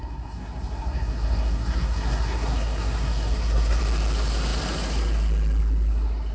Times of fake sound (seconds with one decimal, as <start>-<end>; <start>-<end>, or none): 0.0-3.8